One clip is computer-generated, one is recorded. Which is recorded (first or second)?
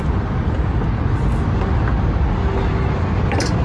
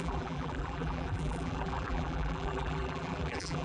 first